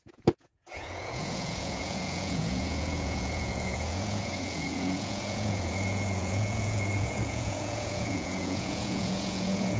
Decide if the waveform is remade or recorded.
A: remade